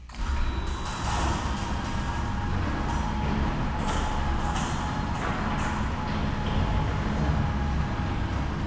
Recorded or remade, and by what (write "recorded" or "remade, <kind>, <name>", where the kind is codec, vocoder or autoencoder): recorded